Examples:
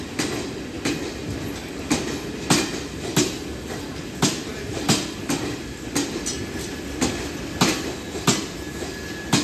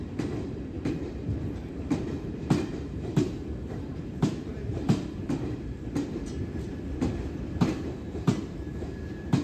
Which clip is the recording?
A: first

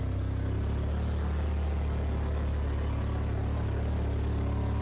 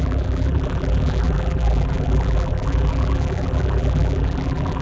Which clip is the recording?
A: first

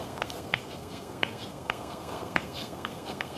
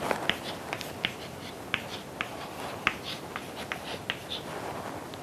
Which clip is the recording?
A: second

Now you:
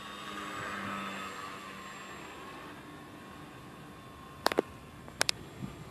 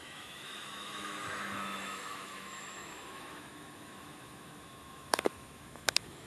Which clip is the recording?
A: first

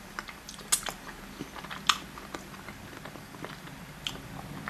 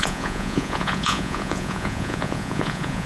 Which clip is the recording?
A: first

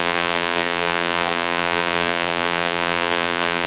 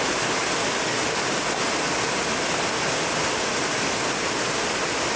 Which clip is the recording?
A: second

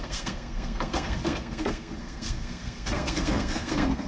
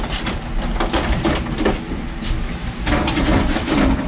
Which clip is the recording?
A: second